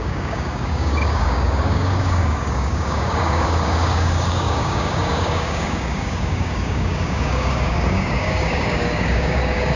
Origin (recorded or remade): remade